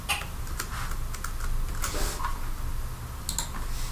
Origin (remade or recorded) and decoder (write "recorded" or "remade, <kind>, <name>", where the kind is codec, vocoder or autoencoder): recorded